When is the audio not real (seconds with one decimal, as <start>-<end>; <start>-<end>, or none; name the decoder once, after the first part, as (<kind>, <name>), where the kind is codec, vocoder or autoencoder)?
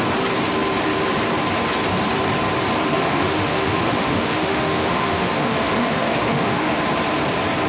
2.8-6.8 (autoencoder, DAC-VAE)